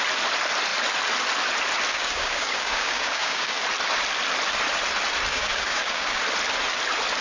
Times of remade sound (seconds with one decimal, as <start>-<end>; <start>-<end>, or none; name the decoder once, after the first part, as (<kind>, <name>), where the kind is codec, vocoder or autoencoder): 1.9-3.6 (codec, DAC); 5.3-6.2